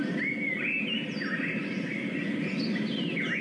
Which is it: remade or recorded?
recorded